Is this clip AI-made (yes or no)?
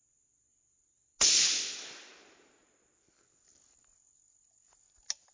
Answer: no